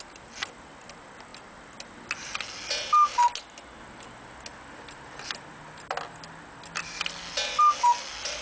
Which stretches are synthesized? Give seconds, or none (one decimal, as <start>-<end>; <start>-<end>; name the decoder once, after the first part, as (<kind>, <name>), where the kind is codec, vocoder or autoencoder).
none

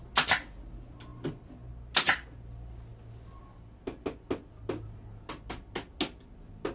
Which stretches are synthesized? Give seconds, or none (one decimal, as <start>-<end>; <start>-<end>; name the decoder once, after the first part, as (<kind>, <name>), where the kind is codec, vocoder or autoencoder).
none

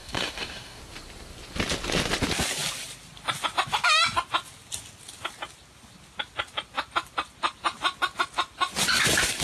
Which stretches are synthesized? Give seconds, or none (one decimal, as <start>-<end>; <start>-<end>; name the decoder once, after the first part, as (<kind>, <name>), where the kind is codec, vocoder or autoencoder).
0.0-0.8 (codec, DAC)

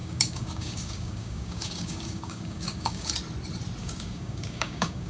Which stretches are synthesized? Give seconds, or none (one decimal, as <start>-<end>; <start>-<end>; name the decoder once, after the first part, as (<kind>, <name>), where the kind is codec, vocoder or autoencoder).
0.0-3.1 (codec, DAC); 3.8-5.1